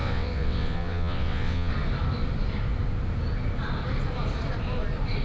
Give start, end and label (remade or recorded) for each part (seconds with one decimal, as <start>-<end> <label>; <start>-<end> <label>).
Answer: 0.0-1.7 remade; 1.7-5.2 recorded